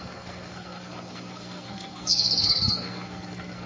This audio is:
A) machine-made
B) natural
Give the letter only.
A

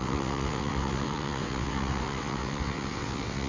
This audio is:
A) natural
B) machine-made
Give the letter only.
B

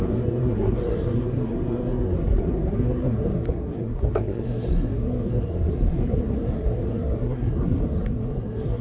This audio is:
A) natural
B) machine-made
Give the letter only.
B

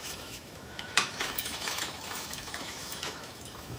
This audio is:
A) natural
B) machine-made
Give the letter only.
B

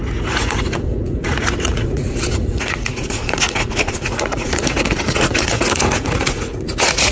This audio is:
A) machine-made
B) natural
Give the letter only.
A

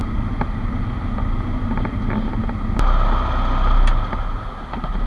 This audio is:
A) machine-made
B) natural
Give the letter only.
B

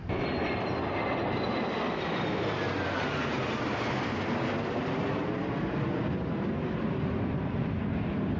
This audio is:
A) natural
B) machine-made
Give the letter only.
A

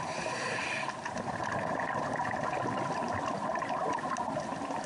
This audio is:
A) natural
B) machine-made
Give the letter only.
A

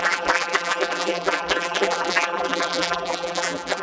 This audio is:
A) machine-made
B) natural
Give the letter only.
A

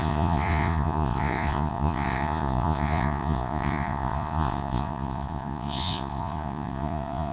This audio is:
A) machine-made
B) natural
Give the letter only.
A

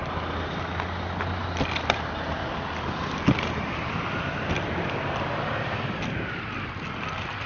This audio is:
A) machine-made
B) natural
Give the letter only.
B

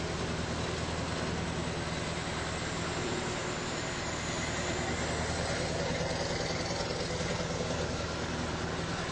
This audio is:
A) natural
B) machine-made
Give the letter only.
A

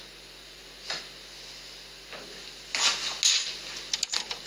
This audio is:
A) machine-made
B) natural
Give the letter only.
B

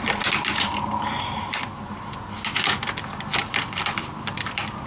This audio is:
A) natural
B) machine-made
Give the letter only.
A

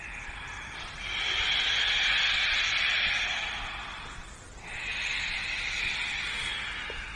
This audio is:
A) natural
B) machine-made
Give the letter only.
A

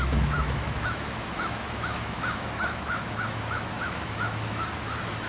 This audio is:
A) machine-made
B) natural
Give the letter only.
A